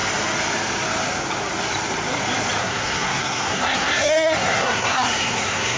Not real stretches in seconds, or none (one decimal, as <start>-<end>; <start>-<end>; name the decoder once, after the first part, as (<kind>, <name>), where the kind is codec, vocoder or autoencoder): 2.6-5.8 (codec, SNAC)

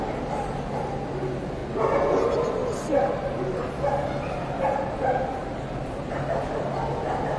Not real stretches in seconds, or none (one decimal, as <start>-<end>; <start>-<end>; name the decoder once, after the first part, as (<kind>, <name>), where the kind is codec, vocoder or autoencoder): none